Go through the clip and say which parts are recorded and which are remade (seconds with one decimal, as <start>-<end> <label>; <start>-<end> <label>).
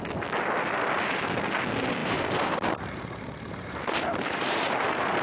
0.0-2.0 recorded; 2.0-5.2 remade